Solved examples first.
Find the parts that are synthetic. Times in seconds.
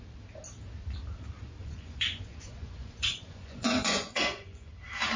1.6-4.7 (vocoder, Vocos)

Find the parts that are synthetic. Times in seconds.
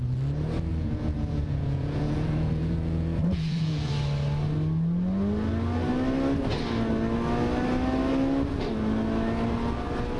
0.7-3.9 (vocoder, Vocos)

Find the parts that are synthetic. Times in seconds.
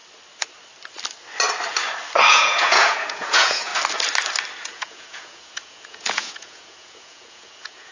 2.3-3.7 (vocoder, Vocos); 4.6-7.9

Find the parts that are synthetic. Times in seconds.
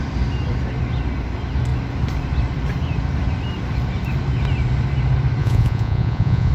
5.4-6.5 (vocoder, Vocos)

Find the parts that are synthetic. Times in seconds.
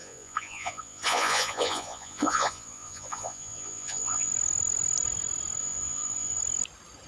0.0-4.3 (vocoder, Vocos); 5.6-6.4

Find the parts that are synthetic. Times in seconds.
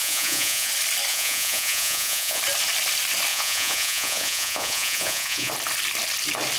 0.0-0.7 (vocoder, Vocos); 1.1-2.4; 3.3-5.5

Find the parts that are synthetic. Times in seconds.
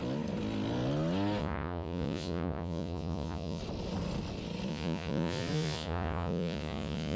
1.4-3.6 (vocoder, Vocos); 4.7-7.2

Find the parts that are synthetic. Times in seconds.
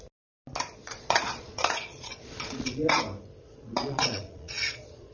0.8-2.9 (vocoder, Vocos); 3.4-5.1